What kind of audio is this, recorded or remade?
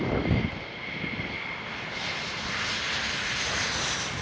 recorded